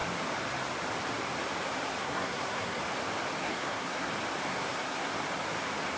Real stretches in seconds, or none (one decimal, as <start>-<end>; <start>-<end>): 0.0-2.0; 2.8-3.4; 4.1-4.5; 5.1-6.0